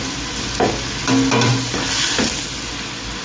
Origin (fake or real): real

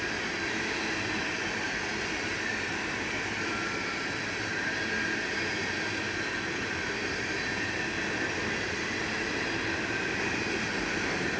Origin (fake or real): real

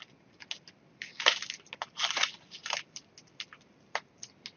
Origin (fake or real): real